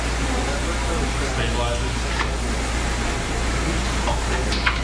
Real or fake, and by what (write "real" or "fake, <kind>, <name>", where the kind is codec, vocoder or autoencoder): real